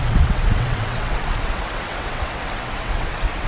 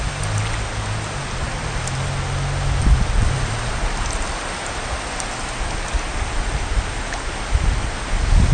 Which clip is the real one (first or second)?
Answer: second